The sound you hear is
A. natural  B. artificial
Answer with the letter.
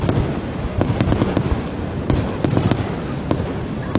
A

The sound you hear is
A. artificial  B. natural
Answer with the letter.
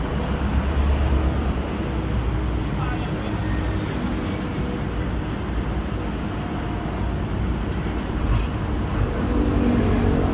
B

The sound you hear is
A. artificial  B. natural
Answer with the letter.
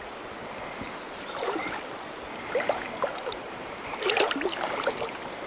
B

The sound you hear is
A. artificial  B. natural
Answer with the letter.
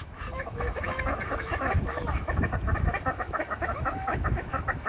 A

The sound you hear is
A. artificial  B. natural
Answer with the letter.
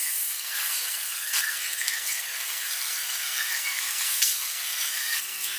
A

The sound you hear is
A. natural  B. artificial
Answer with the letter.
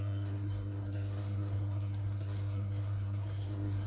B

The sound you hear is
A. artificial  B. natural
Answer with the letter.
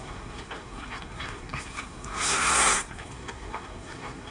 A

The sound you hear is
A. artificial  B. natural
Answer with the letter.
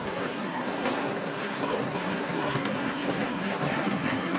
A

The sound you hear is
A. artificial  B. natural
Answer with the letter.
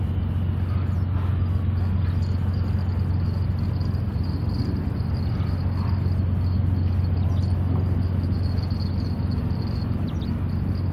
B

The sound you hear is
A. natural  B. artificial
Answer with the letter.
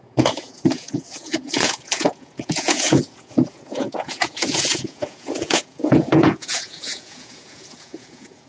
B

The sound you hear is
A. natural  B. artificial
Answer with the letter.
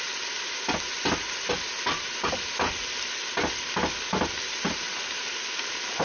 A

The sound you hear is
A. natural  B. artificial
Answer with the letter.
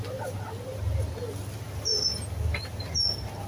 A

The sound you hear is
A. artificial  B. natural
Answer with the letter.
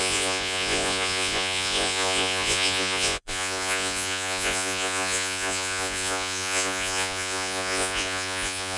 A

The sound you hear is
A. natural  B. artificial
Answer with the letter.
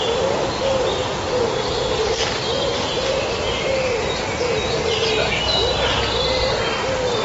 A